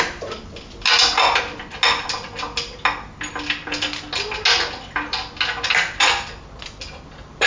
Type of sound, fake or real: real